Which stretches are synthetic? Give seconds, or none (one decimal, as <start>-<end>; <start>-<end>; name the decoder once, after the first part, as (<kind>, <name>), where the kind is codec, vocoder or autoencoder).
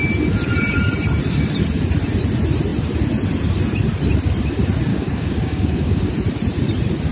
4.9-6.1 (codec, DAC)